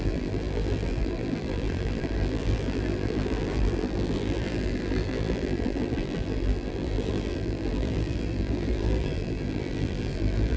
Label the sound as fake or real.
fake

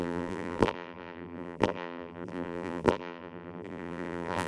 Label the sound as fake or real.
fake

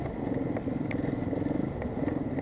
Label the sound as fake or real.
real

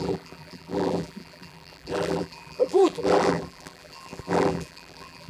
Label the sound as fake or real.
fake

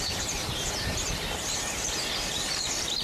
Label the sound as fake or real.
fake